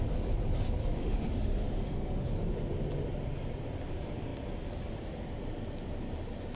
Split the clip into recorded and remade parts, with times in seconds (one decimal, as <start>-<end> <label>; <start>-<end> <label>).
0.0-0.8 recorded; 0.8-2.3 remade; 2.3-6.5 recorded